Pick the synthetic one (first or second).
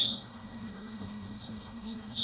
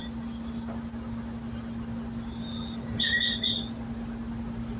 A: first